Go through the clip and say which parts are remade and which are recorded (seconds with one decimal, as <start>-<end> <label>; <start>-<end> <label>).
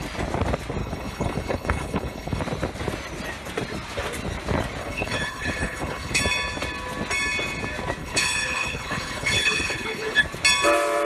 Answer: 0.0-0.8 recorded; 0.8-2.4 remade; 2.4-4.8 recorded; 4.8-6.2 remade; 6.2-8.0 recorded; 8.0-10.2 remade; 10.2-11.1 recorded